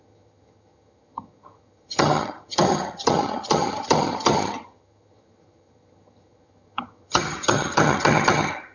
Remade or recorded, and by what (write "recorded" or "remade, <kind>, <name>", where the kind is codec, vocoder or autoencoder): remade, vocoder, HiFi-GAN